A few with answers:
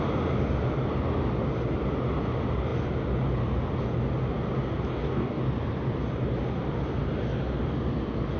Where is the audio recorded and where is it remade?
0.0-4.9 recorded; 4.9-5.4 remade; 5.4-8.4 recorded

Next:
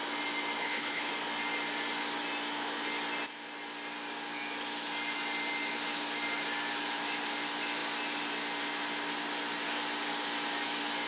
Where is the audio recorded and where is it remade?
0.0-0.6 recorded; 0.6-1.1 remade; 1.1-11.1 recorded

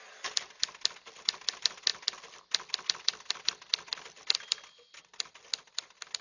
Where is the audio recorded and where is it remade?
0.0-6.2 recorded

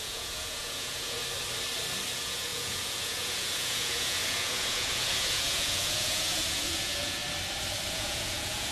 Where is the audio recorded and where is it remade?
0.0-1.2 remade; 1.2-2.1 recorded; 2.1-7.2 remade; 7.2-7.9 recorded; 7.9-8.7 remade

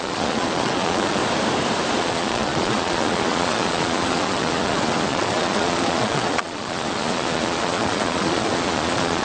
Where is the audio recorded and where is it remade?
0.0-1.2 remade; 1.2-2.0 recorded; 2.0-9.2 remade